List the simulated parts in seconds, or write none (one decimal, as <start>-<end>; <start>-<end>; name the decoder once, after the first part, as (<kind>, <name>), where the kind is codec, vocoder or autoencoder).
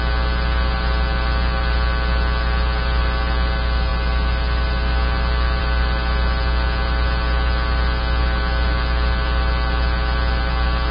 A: none